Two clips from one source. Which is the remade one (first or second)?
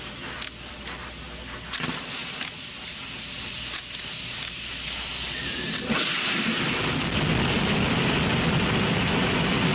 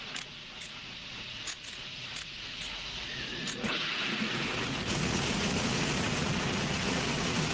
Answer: second